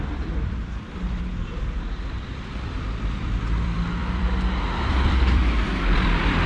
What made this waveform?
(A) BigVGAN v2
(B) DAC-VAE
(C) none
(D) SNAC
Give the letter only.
A